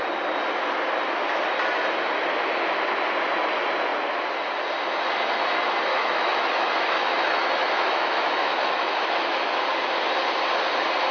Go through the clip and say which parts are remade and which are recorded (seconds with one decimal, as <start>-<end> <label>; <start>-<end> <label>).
0.0-5.9 recorded; 5.9-9.6 remade; 9.6-11.1 recorded